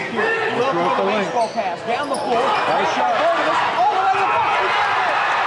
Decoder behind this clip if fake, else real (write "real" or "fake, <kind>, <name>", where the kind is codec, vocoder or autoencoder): real